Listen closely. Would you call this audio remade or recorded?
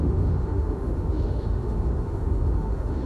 remade